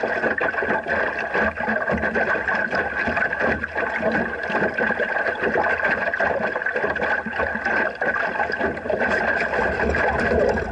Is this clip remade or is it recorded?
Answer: recorded